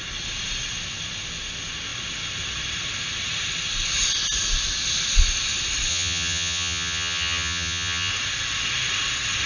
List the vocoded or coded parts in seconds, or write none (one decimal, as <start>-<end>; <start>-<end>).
5.9-8.1